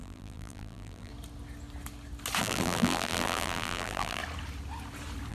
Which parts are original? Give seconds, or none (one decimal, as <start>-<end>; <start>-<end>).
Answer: 1.1-2.4; 4.2-5.3